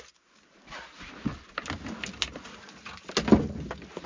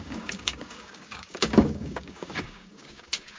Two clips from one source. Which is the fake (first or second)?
second